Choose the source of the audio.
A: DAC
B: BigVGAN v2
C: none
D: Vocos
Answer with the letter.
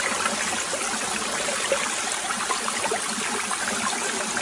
C